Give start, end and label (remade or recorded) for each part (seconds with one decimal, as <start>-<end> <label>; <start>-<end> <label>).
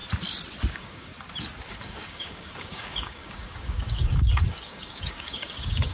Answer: 0.0-0.7 recorded; 0.7-1.1 remade; 1.1-1.8 recorded; 1.8-5.9 remade